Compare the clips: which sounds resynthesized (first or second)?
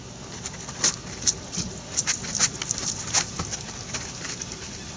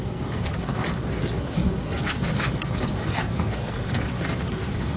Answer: second